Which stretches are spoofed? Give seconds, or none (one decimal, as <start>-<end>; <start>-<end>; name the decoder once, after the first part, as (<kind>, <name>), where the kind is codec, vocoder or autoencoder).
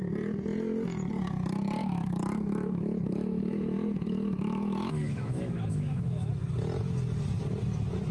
1.8-6.3 (autoencoder, DAC-VAE)